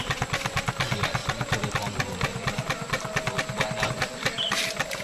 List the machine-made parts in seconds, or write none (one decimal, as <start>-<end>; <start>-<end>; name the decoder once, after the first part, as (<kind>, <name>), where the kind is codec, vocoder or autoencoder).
none